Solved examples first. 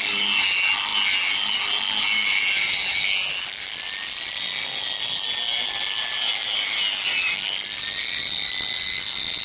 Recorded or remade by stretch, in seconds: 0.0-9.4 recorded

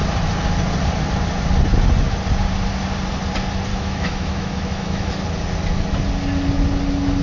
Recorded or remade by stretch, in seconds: 0.0-3.7 recorded; 3.7-5.1 remade; 5.1-7.2 recorded

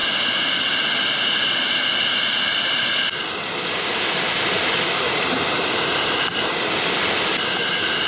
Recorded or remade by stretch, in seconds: 0.0-8.1 recorded

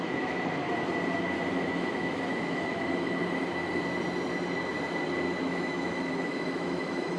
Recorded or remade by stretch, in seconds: 0.0-0.6 remade; 0.6-1.5 recorded; 1.5-3.2 remade; 3.2-5.4 recorded; 5.4-7.2 remade

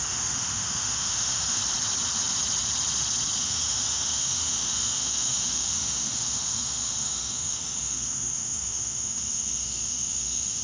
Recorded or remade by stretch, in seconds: 0.0-1.6 remade; 1.6-3.4 recorded; 3.4-10.6 remade

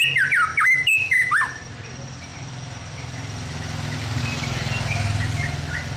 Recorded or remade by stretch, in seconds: 0.0-0.5 recorded; 0.5-1.3 remade; 1.3-6.0 recorded